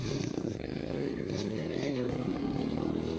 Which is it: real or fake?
fake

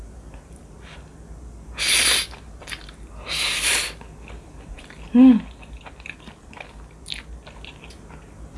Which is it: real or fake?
real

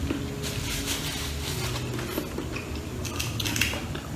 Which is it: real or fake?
real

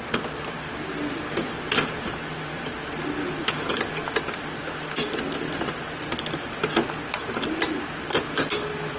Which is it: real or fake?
real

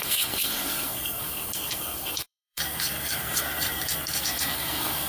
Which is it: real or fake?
fake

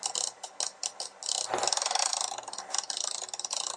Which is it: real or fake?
real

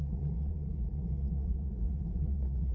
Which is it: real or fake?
fake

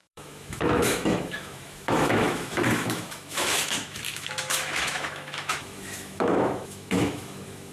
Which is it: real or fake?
fake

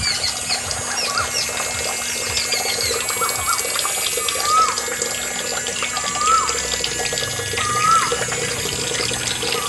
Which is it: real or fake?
real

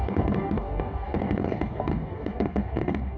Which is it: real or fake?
fake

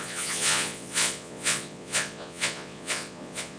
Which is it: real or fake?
fake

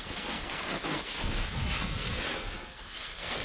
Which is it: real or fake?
fake